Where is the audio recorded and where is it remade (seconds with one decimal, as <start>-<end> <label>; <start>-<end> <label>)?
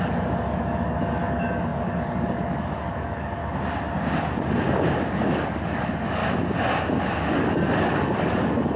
0.0-3.4 remade; 3.4-5.1 recorded; 5.1-6.2 remade; 6.2-6.8 recorded; 6.8-8.8 remade